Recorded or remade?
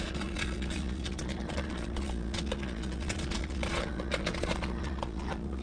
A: remade